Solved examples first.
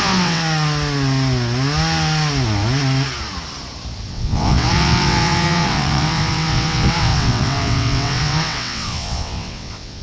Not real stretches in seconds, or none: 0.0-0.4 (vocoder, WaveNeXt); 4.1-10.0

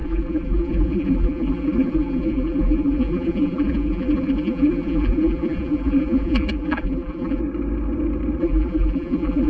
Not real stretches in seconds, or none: 0.0-7.4 (vocoder, BigVGAN v2); 8.4-9.5

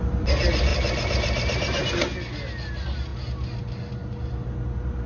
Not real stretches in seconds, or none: none

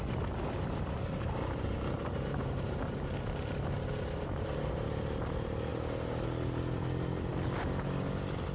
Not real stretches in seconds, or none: none

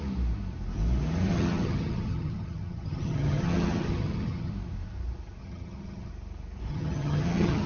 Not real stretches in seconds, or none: 1.3-4.5 (vocoder, HiFi-GAN); 5.4-6.1; 6.7-7.7

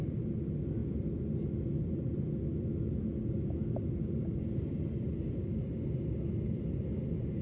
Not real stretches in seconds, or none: none

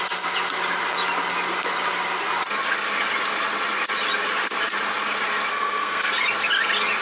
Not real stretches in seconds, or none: 5.5-6.1 (codec, SNAC)